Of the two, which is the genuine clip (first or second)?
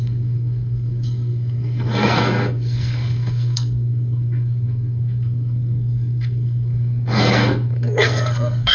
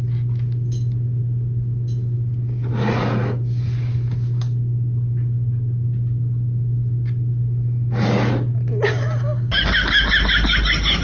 second